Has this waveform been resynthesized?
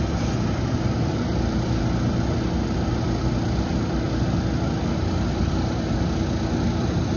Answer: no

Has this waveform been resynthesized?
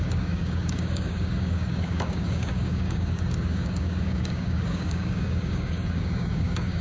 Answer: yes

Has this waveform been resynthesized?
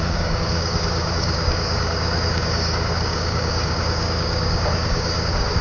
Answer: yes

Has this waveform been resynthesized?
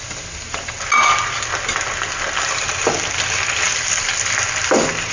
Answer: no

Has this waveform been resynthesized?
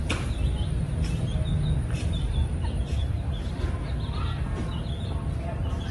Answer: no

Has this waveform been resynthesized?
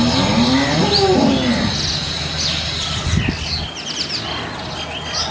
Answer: no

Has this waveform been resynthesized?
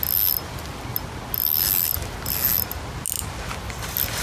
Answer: no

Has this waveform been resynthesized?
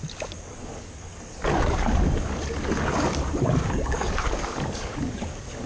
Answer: yes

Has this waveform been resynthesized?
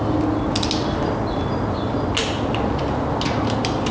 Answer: no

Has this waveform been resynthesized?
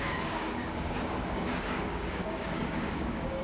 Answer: yes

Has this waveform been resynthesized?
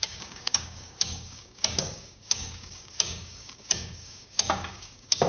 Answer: yes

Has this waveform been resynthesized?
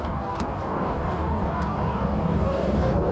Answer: yes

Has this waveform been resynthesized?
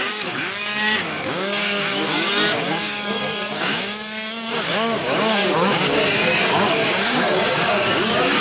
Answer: yes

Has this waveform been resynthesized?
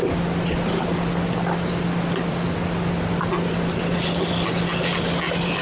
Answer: no